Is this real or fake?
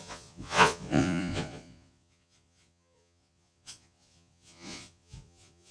fake